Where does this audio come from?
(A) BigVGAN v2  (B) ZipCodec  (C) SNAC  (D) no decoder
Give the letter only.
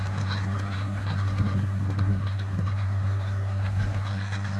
C